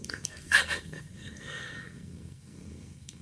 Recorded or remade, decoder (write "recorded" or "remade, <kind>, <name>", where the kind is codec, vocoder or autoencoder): remade, codec, SNAC